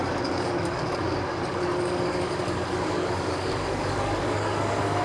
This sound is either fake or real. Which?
fake